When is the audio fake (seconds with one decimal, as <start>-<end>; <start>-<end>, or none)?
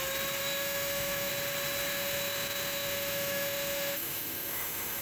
0.4-1.3; 1.9-5.0